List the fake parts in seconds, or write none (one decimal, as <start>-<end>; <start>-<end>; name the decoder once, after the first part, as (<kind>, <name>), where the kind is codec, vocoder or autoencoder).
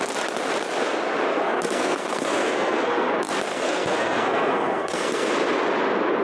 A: 1.3-3.1 (codec, SNAC); 3.5-5.3